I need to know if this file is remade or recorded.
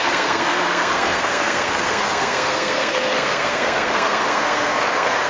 remade